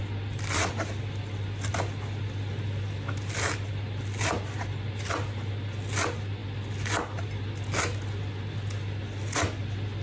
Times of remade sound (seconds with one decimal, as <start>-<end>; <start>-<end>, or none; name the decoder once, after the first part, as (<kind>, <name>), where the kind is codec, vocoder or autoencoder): none